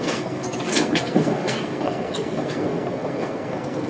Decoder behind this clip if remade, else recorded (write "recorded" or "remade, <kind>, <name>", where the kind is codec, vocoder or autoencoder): remade, codec, SNAC